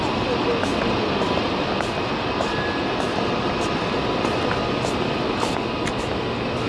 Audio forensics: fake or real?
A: real